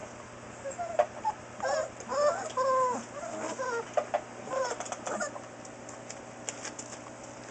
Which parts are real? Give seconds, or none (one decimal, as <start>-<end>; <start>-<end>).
0.0-7.5